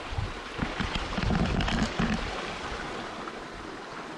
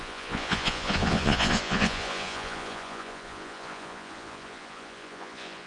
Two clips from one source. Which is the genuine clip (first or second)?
first